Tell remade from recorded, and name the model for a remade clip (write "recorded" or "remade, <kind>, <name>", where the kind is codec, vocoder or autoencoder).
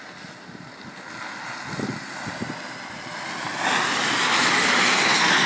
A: recorded